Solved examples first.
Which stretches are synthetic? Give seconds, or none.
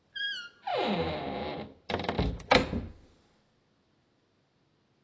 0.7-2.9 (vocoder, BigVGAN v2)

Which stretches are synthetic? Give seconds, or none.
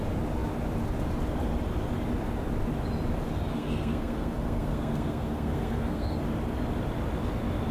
3.5-6.2 (codec, SNAC)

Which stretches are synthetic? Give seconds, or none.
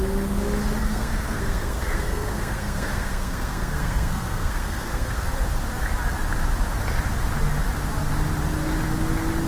0.8-5.3 (codec, SNAC)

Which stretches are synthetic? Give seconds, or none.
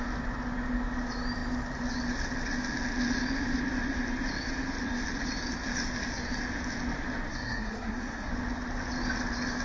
7.3-8.3 (codec, SNAC)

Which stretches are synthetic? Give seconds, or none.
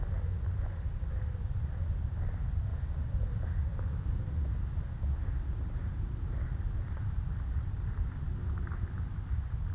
none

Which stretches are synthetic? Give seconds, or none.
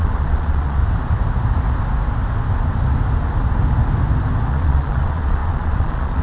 0.0-0.8 (vocoder, Vocos); 4.5-6.2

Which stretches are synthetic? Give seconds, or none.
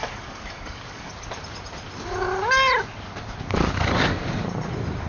0.0-1.1 (codec, DAC)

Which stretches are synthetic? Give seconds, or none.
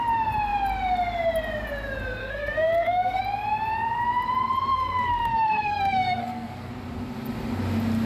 2.2-3.2 (codec, SNAC); 4.7-6.7